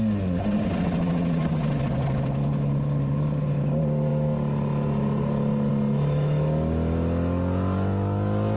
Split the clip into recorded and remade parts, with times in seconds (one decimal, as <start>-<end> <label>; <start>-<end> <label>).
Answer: 0.0-8.6 recorded